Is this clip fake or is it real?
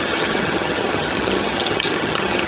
fake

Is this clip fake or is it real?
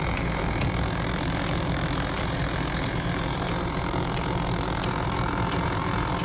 fake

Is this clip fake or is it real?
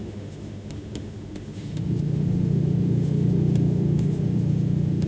fake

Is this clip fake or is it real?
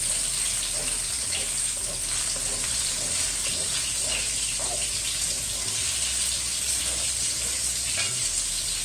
real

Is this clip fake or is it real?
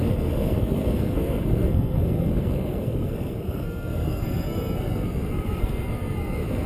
fake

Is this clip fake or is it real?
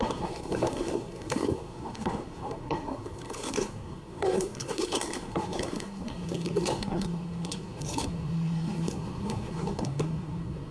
fake